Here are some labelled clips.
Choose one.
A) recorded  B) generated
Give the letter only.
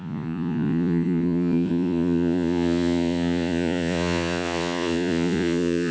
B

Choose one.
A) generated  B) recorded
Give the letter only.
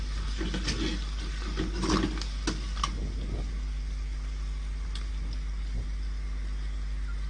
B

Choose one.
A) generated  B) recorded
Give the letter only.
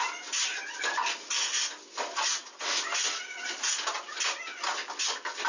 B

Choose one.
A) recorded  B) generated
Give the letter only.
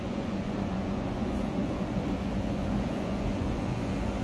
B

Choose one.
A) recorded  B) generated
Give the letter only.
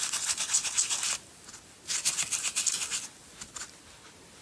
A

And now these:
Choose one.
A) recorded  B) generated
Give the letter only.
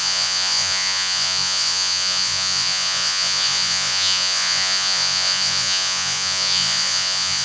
B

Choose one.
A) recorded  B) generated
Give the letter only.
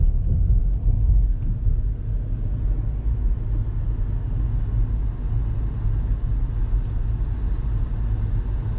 A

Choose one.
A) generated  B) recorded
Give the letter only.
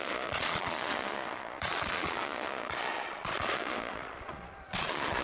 A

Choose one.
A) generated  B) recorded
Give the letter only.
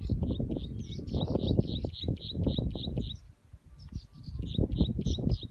B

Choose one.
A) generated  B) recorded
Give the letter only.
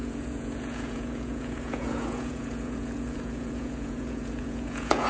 A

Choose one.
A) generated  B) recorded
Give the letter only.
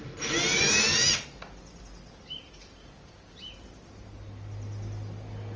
B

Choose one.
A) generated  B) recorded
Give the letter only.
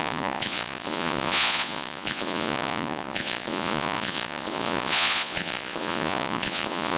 A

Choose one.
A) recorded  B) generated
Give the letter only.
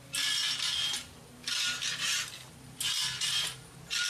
A